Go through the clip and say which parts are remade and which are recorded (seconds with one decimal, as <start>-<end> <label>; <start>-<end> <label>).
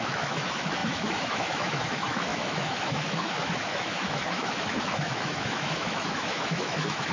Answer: 0.0-7.1 remade